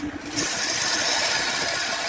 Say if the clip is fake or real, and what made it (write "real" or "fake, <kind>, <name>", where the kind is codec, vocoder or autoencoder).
real